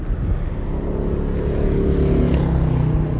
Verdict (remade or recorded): recorded